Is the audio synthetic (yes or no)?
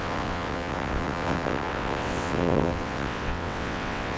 yes